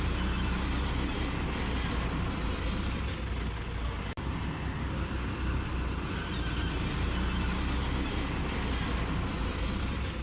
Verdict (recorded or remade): recorded